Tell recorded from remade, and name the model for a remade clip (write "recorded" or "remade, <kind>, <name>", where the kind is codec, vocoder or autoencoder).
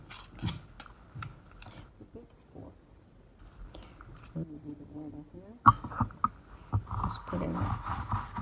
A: recorded